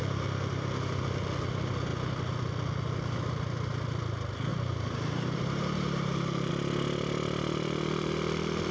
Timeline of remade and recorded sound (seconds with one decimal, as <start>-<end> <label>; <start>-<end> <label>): 0.0-4.5 recorded; 4.5-6.5 remade; 6.5-8.7 recorded